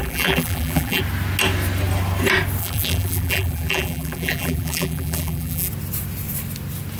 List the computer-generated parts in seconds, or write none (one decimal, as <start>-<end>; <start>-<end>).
0.0-1.0; 2.6-5.7